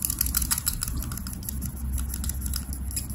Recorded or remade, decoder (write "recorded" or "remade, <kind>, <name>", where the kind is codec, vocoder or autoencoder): recorded